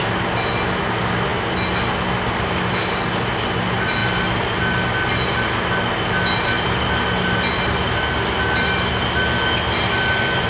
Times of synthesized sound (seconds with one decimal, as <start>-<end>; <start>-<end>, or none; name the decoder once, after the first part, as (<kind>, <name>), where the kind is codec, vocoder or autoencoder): none